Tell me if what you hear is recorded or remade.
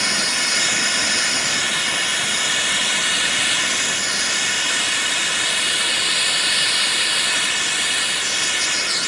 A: recorded